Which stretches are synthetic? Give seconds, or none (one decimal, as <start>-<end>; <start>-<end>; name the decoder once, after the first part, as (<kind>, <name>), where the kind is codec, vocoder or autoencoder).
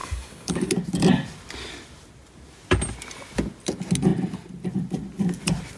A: 0.0-0.7 (codec, DAC)